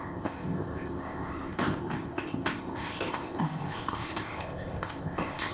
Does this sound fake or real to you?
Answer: fake